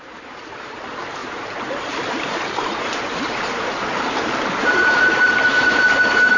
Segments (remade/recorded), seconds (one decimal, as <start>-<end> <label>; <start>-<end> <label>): 0.0-6.4 remade